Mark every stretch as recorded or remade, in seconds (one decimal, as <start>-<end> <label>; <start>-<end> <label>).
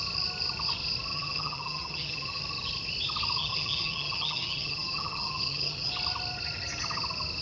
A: 0.0-1.1 recorded; 1.1-2.4 remade; 2.4-3.4 recorded; 3.4-5.9 remade; 5.9-7.4 recorded